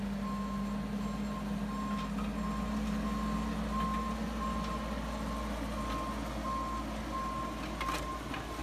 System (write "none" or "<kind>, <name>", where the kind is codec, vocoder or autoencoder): none